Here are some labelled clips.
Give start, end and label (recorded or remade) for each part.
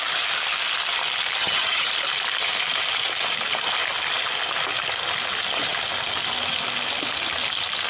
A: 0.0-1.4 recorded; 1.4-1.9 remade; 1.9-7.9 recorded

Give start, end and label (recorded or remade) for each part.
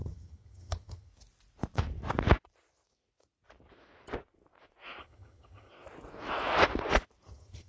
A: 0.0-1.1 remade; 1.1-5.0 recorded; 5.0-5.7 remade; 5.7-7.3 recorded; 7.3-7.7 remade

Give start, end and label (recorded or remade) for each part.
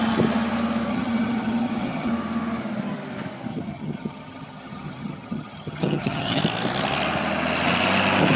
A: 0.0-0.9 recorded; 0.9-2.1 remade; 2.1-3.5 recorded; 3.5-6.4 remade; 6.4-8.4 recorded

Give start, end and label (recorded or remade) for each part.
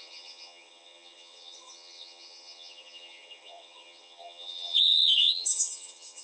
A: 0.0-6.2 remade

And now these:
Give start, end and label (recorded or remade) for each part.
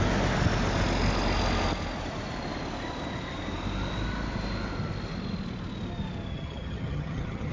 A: 0.0-6.3 recorded; 6.3-7.5 remade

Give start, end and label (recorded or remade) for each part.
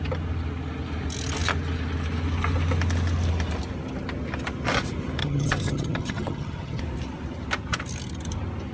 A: 0.0-5.2 recorded; 5.2-6.8 remade; 6.8-8.7 recorded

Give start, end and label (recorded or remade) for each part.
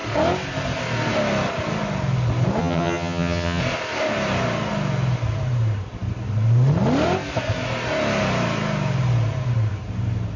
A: 0.0-2.6 recorded; 2.6-3.6 remade; 3.6-10.4 recorded